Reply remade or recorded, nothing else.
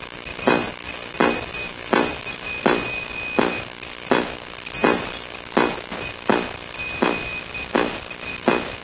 recorded